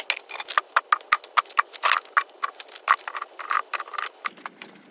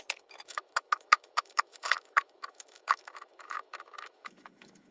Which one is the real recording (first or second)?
first